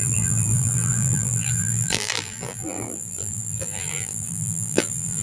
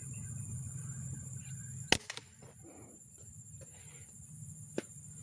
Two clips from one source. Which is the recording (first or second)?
second